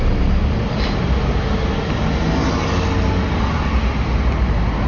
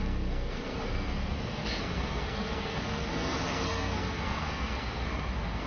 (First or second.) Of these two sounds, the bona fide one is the first